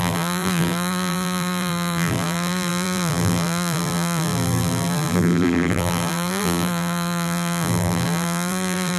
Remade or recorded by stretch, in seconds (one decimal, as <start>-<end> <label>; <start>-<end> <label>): 0.0-9.0 remade